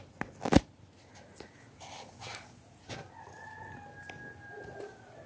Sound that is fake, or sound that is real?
real